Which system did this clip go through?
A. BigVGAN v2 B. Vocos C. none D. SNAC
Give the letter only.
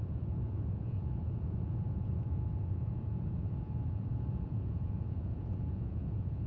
B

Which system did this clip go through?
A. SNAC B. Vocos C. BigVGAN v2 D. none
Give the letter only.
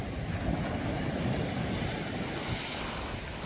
D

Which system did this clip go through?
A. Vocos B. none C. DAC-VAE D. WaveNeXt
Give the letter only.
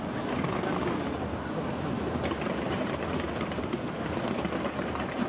B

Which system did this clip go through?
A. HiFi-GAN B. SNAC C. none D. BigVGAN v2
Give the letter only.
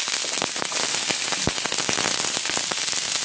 C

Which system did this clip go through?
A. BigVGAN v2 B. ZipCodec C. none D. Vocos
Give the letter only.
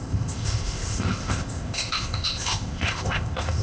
B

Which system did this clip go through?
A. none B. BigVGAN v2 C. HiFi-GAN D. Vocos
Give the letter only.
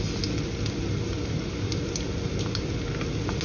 A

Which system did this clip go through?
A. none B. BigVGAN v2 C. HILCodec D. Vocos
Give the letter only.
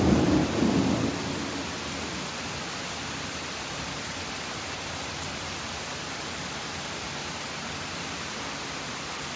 A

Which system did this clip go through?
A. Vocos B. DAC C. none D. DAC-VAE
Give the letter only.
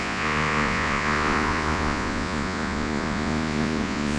A